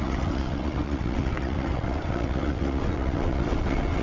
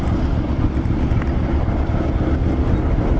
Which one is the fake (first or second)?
first